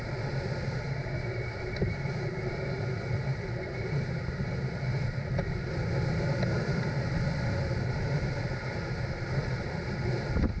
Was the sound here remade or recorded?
recorded